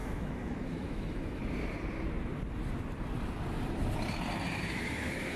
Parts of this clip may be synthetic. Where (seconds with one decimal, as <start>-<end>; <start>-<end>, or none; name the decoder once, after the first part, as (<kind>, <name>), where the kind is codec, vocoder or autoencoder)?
0.0-1.4 (autoencoder, DAC-VAE); 4.6-5.4

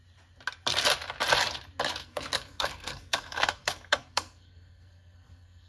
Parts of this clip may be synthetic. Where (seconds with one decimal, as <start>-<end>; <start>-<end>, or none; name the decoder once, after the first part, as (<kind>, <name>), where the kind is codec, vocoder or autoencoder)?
2.0-5.7 (codec, SNAC)

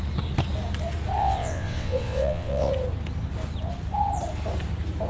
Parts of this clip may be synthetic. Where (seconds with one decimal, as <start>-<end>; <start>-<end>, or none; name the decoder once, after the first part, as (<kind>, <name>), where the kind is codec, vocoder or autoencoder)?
1.2-2.7 (vocoder, WaveNeXt)

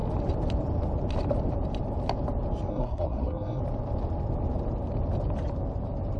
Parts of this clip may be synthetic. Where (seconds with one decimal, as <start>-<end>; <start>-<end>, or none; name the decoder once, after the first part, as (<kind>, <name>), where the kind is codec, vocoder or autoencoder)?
2.7-3.6 (codec, SNAC)